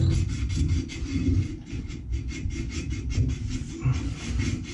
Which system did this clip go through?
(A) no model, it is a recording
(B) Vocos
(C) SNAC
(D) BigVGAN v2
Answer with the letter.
A